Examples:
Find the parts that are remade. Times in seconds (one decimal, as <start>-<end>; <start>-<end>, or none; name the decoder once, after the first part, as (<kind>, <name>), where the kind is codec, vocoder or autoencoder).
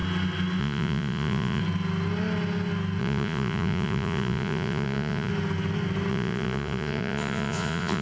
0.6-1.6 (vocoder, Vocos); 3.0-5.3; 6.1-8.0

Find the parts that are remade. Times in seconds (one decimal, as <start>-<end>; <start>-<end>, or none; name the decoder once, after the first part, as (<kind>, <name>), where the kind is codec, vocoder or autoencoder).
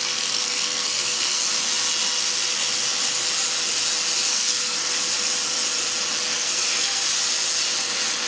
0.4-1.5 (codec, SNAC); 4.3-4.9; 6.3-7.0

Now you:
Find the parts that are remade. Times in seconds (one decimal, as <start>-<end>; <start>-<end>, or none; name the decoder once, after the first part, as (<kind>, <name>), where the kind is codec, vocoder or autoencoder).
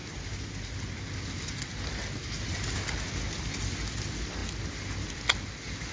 none